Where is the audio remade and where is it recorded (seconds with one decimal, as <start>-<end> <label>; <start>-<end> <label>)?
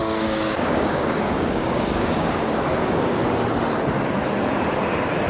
0.0-3.2 remade; 3.2-5.3 recorded